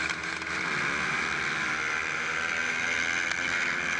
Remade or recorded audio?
recorded